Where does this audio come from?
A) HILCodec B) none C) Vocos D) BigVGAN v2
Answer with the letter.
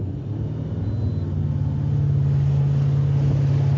B